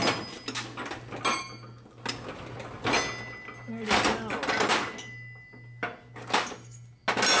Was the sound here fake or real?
real